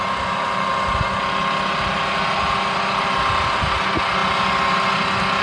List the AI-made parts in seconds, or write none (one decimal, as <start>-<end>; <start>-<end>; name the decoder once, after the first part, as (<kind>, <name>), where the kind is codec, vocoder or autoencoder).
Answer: none